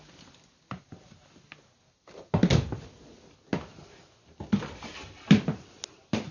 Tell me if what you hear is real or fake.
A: real